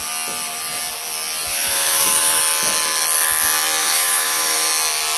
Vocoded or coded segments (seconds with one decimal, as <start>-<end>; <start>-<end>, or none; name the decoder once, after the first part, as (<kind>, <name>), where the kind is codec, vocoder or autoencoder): 1.5-2.4 (autoencoder, DAC-VAE); 3.8-4.7